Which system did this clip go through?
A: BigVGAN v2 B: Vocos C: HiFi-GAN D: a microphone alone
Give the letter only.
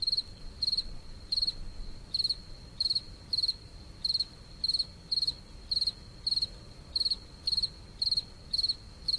D